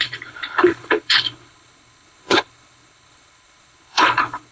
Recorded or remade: remade